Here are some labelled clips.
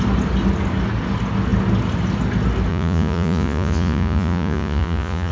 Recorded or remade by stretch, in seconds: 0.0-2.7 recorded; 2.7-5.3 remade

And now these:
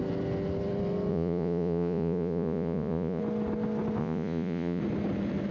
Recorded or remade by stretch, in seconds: 0.0-1.1 recorded; 1.1-3.2 remade; 3.2-4.0 recorded; 4.0-4.8 remade; 4.8-5.5 recorded